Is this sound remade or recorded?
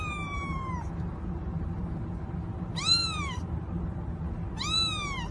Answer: remade